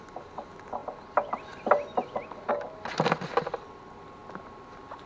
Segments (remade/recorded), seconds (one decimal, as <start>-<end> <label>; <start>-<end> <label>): 0.0-5.1 recorded